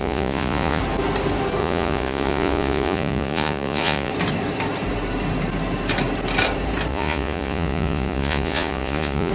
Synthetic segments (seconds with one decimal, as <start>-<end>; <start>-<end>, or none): 0.0-0.8; 1.6-4.1; 6.9-9.3